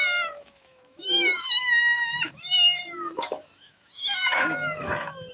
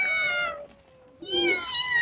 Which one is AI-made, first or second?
first